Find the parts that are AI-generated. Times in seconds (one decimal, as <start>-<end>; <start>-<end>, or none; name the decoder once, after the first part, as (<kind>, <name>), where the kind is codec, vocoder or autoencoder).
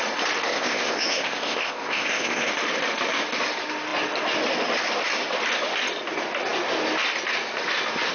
0.5-2.5 (codec, ZipCodec)